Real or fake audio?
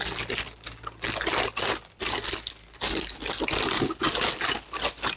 real